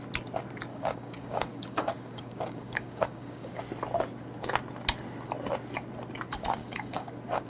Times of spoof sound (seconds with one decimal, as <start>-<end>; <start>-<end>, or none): 0.7-3.6; 6.6-7.1